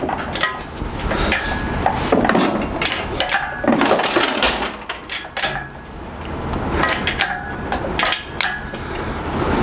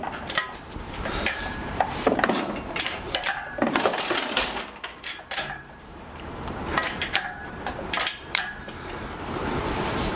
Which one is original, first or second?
first